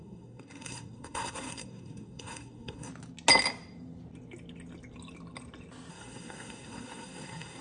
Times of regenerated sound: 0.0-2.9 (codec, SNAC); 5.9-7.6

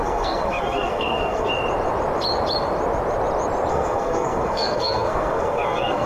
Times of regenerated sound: 0.0-1.5 (codec, SNAC); 3.7-6.1

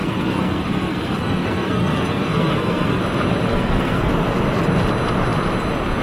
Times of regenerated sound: 0.0-3.0 (codec, SNAC); 3.5-4.1

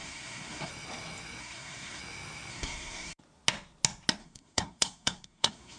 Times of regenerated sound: 0.0-0.7 (codec, SNAC); 1.4-2.0; 2.5-3.2; 4.2-5.8

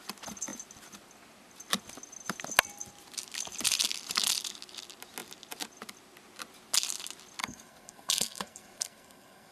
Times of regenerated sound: 7.4-9.5 (codec, SNAC)

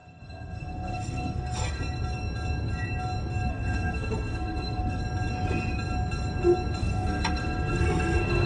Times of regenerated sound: 0.0-1.8 (codec, SNAC); 3.5-5.0; 6.8-8.5